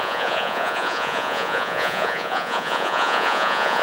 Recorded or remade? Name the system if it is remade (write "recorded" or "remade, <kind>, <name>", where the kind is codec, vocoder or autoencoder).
remade, vocoder, Vocos